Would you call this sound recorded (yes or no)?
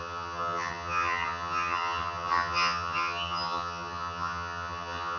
no